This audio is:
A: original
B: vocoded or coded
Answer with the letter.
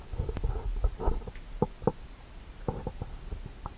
A